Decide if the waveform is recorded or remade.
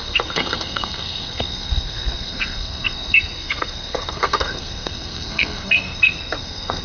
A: remade